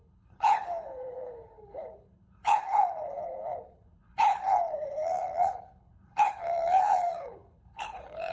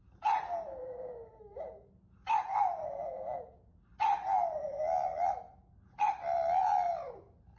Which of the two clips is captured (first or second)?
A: second